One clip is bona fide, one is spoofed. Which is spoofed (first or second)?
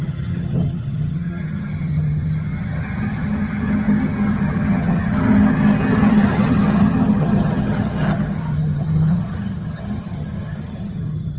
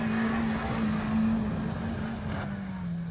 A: first